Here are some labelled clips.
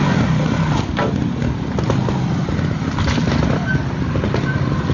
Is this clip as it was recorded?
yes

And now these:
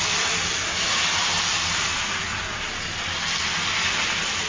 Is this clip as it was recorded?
yes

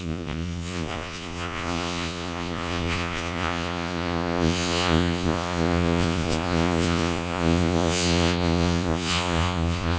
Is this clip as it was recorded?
no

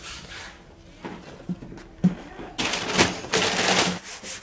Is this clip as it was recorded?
yes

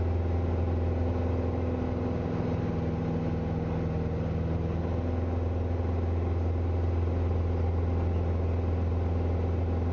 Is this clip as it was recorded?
yes